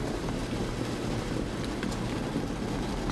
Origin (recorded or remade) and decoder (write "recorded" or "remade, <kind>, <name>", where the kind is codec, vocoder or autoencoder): recorded